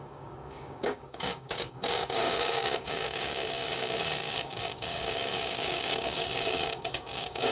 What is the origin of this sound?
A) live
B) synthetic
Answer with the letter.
B